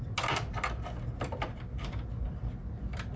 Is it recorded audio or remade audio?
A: recorded